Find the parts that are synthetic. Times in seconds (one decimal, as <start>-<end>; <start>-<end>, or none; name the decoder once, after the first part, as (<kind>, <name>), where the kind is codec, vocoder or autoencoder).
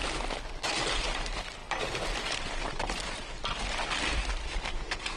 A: none